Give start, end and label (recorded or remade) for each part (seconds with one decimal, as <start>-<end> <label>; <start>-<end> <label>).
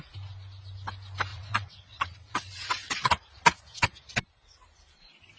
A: 0.0-1.3 recorded; 1.3-3.1 remade; 3.1-5.4 recorded